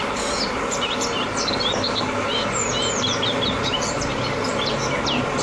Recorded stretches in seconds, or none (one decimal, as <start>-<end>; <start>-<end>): none